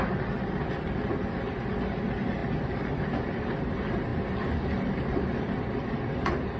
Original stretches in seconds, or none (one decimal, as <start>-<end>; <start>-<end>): 0.0-6.6